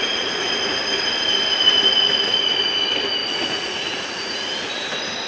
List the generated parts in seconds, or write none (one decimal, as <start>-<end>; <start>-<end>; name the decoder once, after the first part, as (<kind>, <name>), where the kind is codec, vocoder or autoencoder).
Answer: 0.0-0.7 (vocoder, Vocos); 3.2-4.5